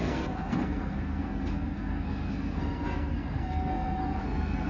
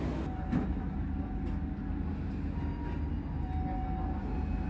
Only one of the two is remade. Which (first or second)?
first